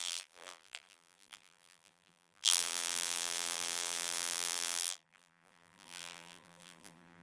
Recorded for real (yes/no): no